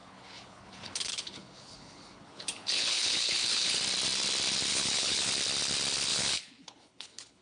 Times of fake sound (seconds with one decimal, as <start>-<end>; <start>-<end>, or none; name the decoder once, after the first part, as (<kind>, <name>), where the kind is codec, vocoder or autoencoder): 0.0-3.8 (codec, HILCodec); 4.7-5.3; 6.1-7.4